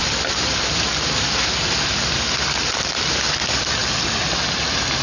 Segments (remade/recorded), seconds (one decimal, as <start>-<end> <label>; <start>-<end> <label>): 0.0-5.0 recorded